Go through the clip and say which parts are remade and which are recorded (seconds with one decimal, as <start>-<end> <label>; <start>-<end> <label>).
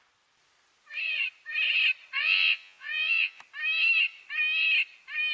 0.0-2.2 recorded; 2.2-3.4 remade; 3.4-5.3 recorded